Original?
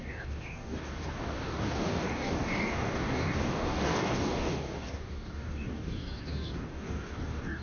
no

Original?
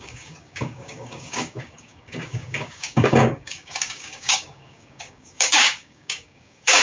no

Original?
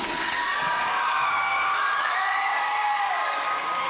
no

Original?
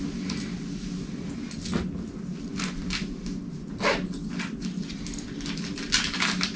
yes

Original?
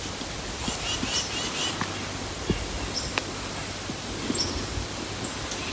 yes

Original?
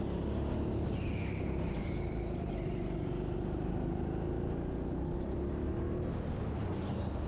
yes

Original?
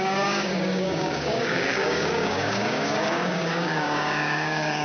no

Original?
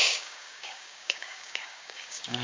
no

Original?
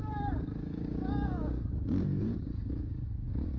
no